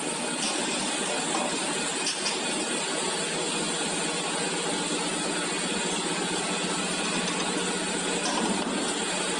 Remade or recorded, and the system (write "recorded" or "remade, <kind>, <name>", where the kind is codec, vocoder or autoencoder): recorded